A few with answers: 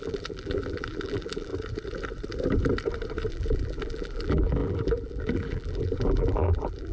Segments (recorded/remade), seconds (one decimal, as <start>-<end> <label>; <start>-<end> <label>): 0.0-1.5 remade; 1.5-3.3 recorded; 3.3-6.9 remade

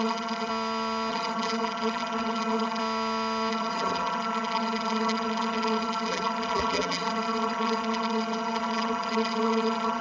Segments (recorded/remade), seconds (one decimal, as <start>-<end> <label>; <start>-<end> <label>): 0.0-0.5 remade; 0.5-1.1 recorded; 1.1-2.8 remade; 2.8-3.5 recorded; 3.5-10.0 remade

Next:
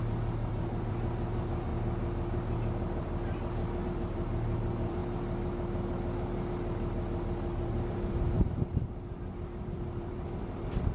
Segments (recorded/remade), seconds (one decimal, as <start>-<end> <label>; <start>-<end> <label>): 0.0-5.0 remade; 5.0-7.9 recorded; 7.9-10.9 remade

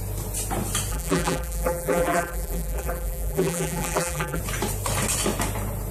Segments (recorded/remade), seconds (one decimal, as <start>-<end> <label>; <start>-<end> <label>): 0.0-0.9 recorded; 0.9-4.4 remade; 4.4-5.9 recorded

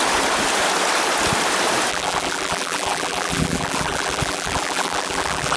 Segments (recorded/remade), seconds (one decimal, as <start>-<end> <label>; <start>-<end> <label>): 0.0-1.9 recorded; 1.9-5.6 remade

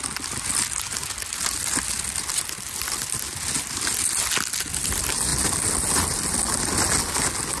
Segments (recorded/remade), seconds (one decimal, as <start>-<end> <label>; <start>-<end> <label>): 0.0-7.6 recorded

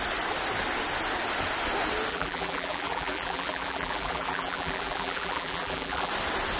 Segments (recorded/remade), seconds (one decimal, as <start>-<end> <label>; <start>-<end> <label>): 0.0-2.1 recorded; 2.1-6.1 remade; 6.1-6.6 recorded